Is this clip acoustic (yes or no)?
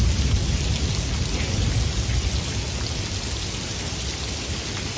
yes